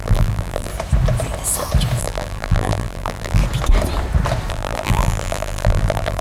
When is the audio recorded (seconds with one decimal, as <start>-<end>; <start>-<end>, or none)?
0.7-2.0; 3.4-4.5